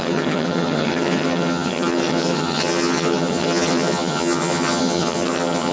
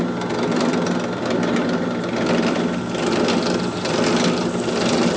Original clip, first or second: second